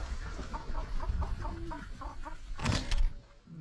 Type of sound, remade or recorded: recorded